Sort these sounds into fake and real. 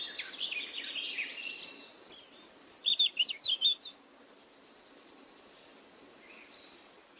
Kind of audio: real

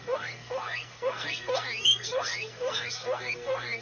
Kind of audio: fake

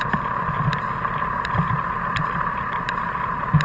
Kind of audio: real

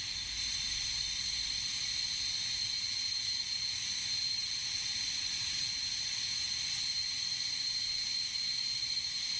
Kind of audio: real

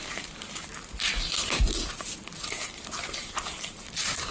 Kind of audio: fake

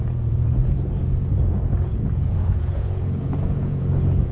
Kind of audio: fake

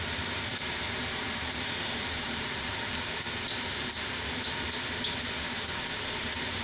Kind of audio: fake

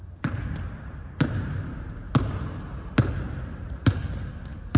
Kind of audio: real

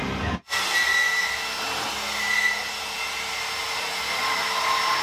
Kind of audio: real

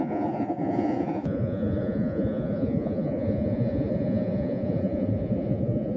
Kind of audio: fake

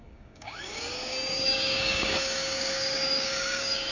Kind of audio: fake